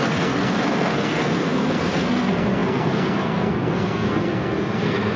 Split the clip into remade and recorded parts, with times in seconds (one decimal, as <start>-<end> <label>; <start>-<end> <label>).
0.0-5.2 remade